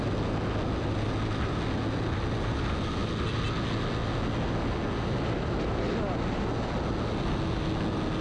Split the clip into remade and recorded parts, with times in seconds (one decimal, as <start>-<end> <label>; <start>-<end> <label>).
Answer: 0.0-8.2 recorded

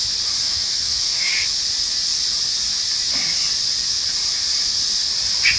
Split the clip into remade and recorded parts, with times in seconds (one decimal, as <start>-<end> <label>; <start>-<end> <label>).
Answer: 0.0-0.4 recorded; 0.4-1.3 remade; 1.3-5.6 recorded